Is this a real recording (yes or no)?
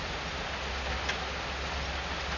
yes